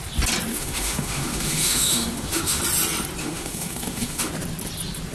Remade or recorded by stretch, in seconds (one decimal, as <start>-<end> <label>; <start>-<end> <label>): 0.0-0.5 recorded; 0.5-2.6 remade; 2.6-3.2 recorded; 3.2-4.3 remade; 4.3-5.1 recorded

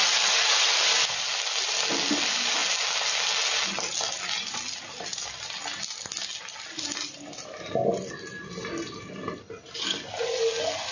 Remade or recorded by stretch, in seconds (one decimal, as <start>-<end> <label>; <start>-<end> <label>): 0.0-10.9 recorded

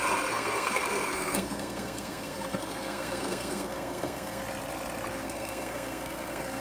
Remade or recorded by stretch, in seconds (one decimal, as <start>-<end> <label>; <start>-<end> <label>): 0.0-4.4 remade; 4.4-5.1 recorded; 5.1-6.6 remade

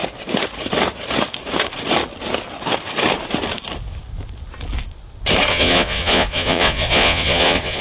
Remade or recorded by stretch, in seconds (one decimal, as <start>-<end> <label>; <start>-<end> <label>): 0.0-5.5 recorded; 5.5-7.8 remade

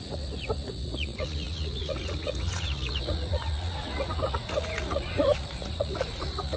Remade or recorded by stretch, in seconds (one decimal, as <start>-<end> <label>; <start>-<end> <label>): 0.0-6.6 remade

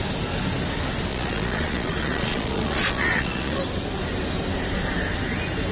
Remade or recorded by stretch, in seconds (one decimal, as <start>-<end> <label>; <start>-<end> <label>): 0.0-1.1 recorded; 1.1-3.6 remade; 3.6-5.7 recorded